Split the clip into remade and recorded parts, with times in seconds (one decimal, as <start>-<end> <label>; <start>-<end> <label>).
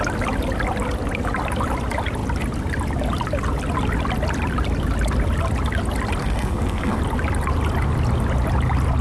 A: 0.0-6.2 recorded; 6.2-7.0 remade; 7.0-9.0 recorded